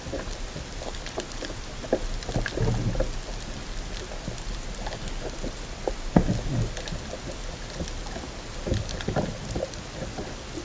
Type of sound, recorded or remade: recorded